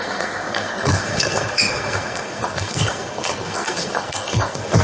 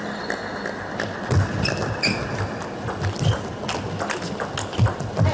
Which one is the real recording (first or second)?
second